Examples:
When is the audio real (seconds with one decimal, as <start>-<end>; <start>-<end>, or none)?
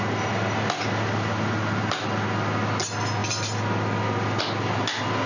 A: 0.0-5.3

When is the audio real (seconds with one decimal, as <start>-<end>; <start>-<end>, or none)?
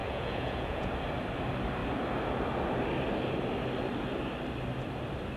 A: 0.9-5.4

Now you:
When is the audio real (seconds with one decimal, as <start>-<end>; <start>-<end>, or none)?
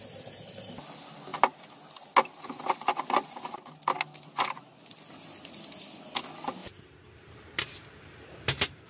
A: 0.0-8.9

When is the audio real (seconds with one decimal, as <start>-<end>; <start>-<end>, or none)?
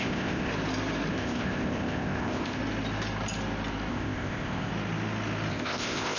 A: 0.5-1.1; 2.6-3.9; 4.7-5.5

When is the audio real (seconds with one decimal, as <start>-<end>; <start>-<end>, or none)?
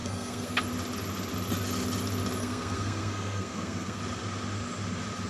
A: 0.6-2.4; 4.0-5.3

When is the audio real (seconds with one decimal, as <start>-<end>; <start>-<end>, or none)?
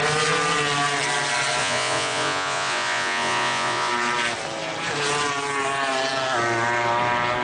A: 0.0-1.6; 3.9-7.4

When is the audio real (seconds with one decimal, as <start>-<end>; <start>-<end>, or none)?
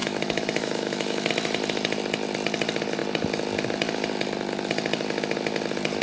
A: 1.3-6.0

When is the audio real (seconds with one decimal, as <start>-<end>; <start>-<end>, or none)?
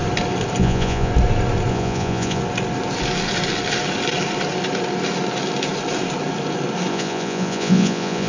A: 0.0-0.6; 1.1-1.7; 2.4-6.9